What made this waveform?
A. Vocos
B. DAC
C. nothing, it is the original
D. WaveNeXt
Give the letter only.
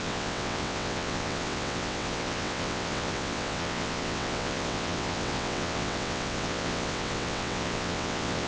D